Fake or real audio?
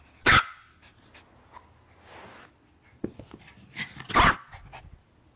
real